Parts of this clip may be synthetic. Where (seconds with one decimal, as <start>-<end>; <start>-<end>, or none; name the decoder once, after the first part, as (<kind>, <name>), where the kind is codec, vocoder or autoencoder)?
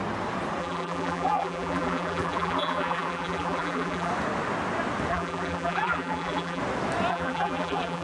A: 0.6-4.1 (vocoder, BigVGAN v2); 5.1-6.6; 7.1-8.0